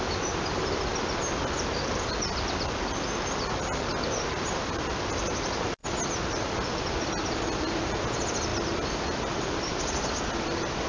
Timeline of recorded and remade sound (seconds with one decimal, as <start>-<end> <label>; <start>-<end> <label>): 0.0-0.9 remade; 0.9-4.1 recorded; 4.1-10.9 remade

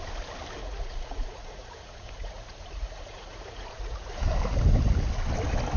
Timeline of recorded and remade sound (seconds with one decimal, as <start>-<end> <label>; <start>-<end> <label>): 0.0-0.6 recorded; 0.6-4.1 remade; 4.1-5.8 recorded

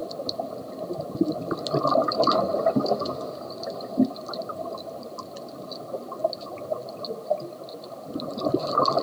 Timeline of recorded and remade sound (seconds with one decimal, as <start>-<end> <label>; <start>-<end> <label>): 0.0-9.0 recorded